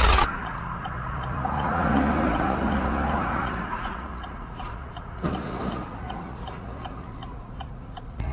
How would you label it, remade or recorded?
remade